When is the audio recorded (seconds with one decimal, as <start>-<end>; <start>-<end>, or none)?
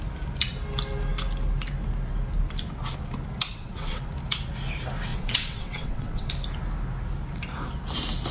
0.0-3.5; 4.1-5.1; 6.3-8.3